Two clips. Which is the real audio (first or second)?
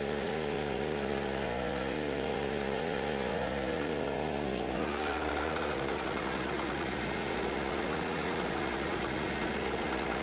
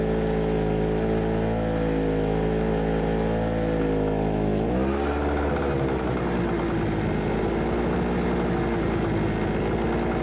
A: second